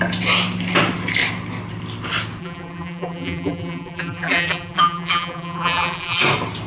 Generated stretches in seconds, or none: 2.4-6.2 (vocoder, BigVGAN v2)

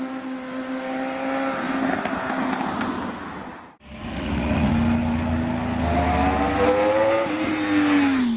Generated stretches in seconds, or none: 4.0-4.7 (vocoder, Vocos)

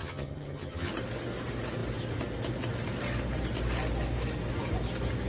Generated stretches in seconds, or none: 0.0-0.9 (vocoder, HiFi-GAN)

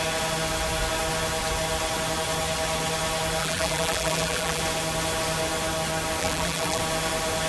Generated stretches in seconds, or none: 3.4-4.6 (vocoder, BigVGAN v2); 6.2-6.8

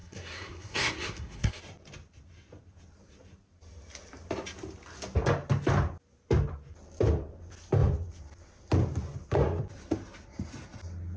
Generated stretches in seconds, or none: 0.0-1.6 (codec, SNAC)

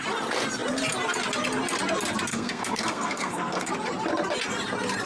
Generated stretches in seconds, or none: 2.3-3.7 (codec, SNAC)